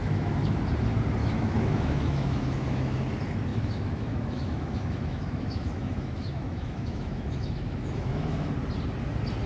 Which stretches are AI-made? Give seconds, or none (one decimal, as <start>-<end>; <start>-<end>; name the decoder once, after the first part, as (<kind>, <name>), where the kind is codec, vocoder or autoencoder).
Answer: 0.0-0.6 (autoencoder, DAC-VAE); 1.2-3.1; 3.5-8.5